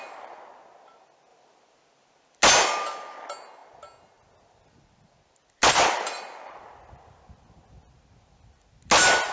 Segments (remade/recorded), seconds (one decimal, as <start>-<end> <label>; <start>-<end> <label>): 0.0-9.3 recorded